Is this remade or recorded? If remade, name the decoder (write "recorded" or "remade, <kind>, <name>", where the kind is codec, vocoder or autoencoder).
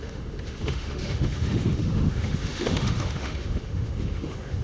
remade, autoencoder, DAC-VAE